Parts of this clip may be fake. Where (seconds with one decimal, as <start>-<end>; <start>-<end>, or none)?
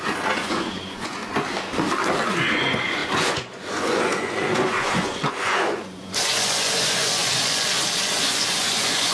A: 0.0-1.2; 2.3-9.1